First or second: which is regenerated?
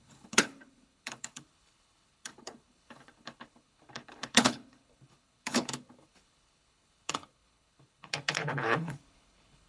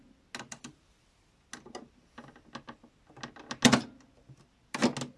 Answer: first